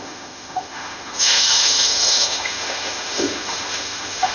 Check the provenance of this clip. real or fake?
fake